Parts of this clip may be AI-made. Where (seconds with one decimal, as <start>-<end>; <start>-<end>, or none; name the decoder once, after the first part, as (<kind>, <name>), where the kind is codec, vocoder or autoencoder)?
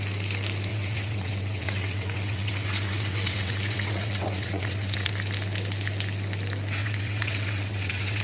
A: 0.7-5.1 (vocoder, WaveNeXt); 6.8-8.2